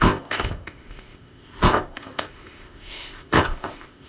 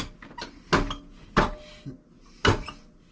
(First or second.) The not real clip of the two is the first